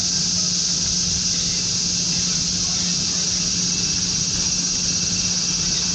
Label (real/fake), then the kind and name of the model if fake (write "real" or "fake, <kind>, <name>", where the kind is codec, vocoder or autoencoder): real